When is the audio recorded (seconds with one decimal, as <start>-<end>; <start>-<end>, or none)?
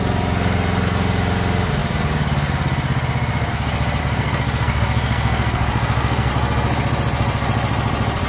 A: 0.0-4.0; 6.3-8.3